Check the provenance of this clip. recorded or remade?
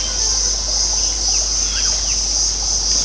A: recorded